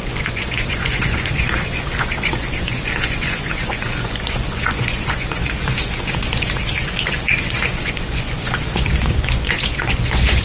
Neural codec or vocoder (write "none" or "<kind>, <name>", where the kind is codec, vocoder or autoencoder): vocoder, Vocos